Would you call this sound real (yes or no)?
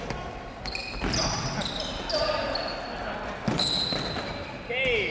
yes